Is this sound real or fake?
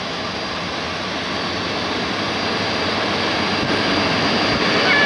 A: real